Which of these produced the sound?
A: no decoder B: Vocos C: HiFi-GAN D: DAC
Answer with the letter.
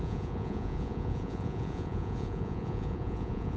B